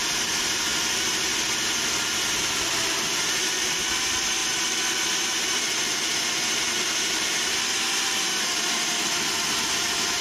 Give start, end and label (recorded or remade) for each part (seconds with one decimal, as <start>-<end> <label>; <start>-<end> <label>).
0.0-10.2 recorded